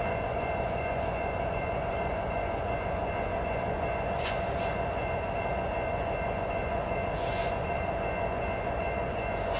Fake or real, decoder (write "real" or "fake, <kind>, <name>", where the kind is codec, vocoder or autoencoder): fake, vocoder, Vocos